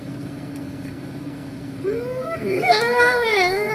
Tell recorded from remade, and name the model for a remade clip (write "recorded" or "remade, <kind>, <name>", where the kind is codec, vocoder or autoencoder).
remade, codec, SNAC